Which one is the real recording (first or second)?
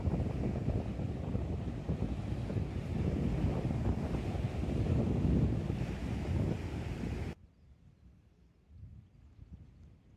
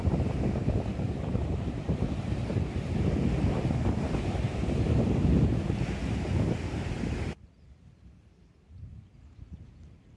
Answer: first